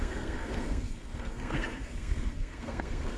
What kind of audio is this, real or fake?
fake